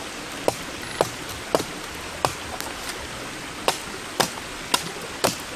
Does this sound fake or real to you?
real